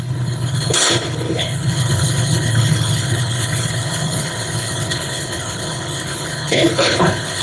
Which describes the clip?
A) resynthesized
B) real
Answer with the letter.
A